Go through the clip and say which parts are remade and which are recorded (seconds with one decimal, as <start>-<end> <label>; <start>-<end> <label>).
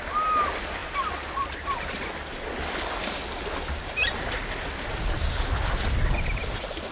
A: 0.0-6.9 recorded